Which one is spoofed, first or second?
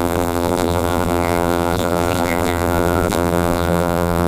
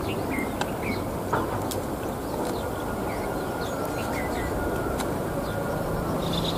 first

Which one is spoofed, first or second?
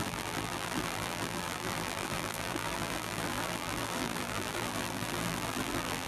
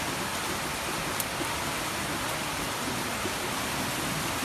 first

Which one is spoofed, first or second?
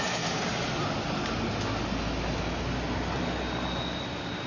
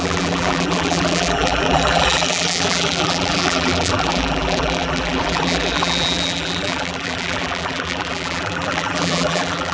second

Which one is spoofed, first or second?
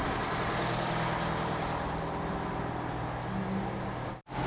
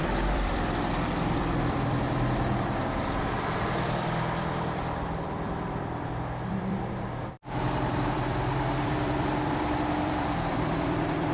second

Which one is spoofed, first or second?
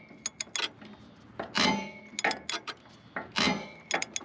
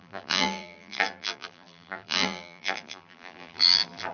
second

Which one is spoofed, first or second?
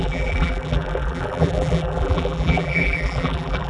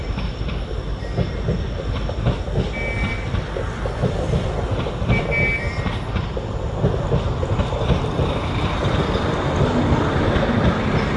first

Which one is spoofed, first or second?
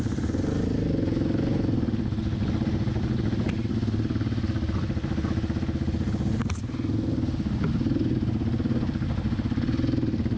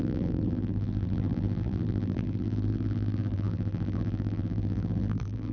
second